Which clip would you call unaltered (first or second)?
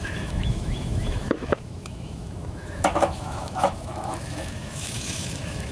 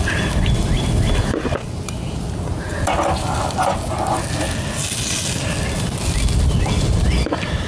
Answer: second